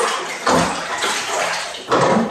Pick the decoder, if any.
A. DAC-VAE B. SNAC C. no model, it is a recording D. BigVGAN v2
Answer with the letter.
D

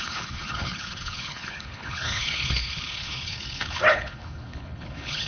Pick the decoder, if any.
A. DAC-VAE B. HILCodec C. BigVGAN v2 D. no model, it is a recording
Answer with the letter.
B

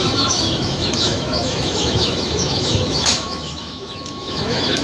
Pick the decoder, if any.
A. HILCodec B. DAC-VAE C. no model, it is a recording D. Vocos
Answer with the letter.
B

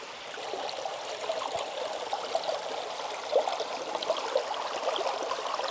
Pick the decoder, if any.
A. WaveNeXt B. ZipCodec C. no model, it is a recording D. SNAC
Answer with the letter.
C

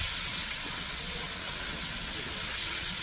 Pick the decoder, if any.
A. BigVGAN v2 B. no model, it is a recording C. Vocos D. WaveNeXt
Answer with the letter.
D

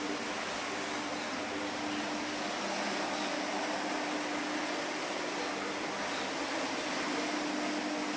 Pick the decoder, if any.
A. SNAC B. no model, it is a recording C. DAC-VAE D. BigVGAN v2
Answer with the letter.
B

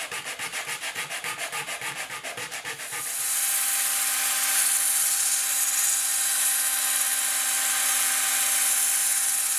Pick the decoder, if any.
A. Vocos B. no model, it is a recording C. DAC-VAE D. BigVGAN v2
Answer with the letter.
B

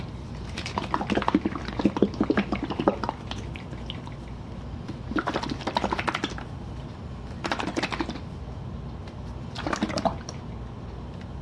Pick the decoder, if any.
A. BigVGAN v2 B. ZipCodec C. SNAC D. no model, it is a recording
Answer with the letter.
D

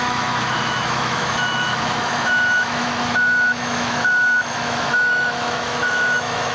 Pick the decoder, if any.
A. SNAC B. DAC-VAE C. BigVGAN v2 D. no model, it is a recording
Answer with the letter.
B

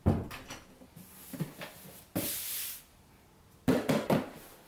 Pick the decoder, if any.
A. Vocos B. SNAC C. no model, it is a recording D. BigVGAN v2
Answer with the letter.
C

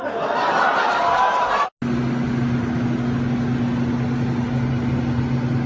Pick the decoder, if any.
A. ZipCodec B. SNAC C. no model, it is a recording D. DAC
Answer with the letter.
C